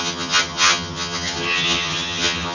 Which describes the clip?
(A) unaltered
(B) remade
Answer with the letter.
B